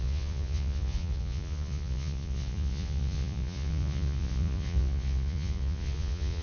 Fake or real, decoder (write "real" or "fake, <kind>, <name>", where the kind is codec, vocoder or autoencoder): fake, vocoder, Vocos